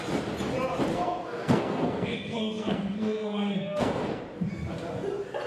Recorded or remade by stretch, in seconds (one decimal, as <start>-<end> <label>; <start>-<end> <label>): 0.0-0.9 recorded; 0.9-4.2 remade; 4.2-5.5 recorded